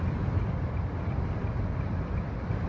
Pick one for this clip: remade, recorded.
recorded